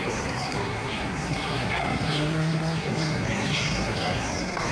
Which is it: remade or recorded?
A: remade